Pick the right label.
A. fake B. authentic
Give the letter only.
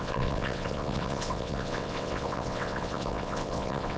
A